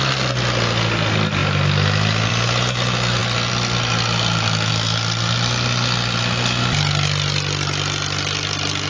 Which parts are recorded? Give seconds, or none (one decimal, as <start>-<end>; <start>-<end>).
0.0-8.9